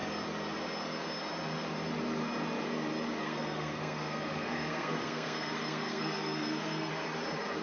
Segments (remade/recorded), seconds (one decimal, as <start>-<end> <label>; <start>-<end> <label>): 0.0-3.2 recorded; 3.2-6.9 remade; 6.9-7.6 recorded